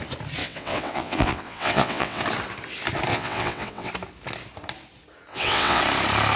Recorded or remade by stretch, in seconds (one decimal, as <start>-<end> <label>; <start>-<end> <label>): 0.0-0.4 recorded; 0.4-2.2 remade; 2.2-3.1 recorded; 3.1-3.9 remade; 3.9-5.3 recorded; 5.3-5.8 remade; 5.8-6.4 recorded